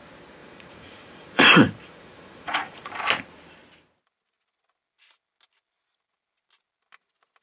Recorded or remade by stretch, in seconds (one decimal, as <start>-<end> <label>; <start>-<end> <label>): 0.0-0.4 recorded; 0.4-2.9 remade; 2.9-7.4 recorded